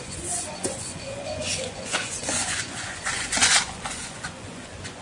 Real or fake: fake